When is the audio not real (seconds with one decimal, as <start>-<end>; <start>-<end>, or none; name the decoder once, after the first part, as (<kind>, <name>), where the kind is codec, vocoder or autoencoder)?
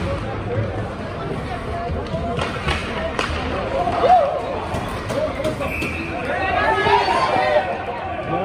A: 2.8-4.3 (vocoder, BigVGAN v2)